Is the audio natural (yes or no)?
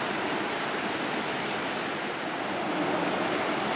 yes